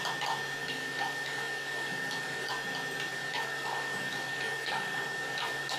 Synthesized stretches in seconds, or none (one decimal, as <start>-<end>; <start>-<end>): 0.6-2.5; 3.1-5.8